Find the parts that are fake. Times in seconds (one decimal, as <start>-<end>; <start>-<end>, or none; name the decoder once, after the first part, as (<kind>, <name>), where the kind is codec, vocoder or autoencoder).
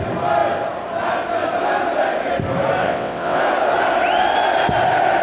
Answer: 2.8-3.4 (vocoder, WaveNeXt)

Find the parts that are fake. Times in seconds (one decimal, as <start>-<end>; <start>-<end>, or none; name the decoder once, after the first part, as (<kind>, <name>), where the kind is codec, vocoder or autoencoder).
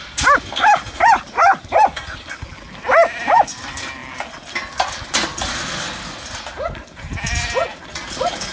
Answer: none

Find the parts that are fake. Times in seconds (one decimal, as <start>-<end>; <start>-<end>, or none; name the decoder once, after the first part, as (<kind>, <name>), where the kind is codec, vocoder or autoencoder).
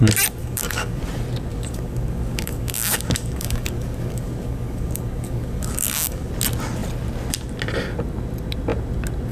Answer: 0.4-1.0 (codec, DAC); 1.5-6.3